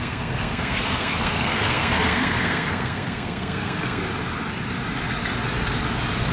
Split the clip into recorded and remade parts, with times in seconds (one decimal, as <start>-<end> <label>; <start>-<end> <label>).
0.0-4.0 remade; 4.0-6.3 recorded